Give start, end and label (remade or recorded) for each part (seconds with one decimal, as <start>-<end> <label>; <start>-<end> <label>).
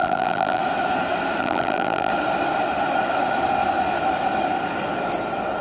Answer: 0.0-0.6 remade; 0.6-1.4 recorded; 1.4-2.1 remade; 2.1-5.6 recorded